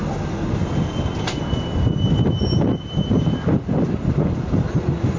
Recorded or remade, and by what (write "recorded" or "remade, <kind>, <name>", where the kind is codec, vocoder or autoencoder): recorded